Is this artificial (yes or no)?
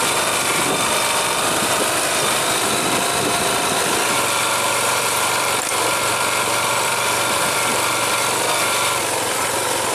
yes